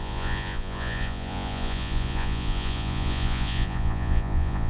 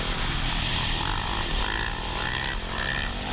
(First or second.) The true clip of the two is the second